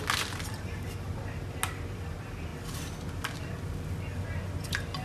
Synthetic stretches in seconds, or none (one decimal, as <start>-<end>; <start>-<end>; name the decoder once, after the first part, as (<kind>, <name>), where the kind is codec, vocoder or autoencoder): none